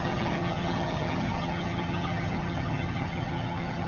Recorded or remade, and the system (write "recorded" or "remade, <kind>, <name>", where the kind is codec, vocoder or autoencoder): remade, vocoder, HiFi-GAN